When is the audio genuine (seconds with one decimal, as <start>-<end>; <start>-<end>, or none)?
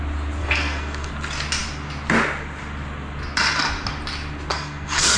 0.0-0.4; 1.1-4.5